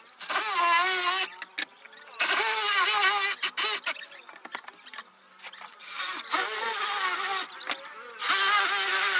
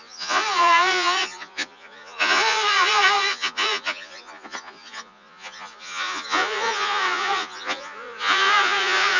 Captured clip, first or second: first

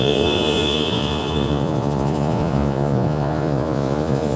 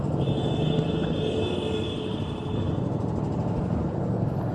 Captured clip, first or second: second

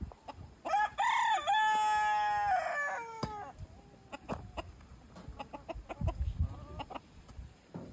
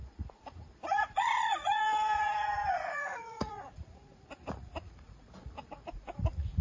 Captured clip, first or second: first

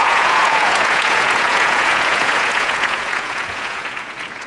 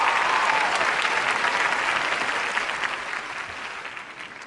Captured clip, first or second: second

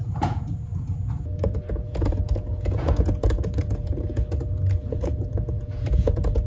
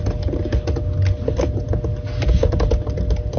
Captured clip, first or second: second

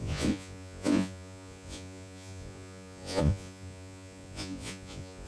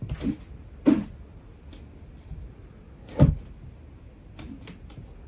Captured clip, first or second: second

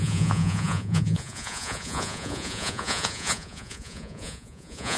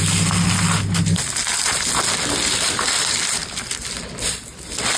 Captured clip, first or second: second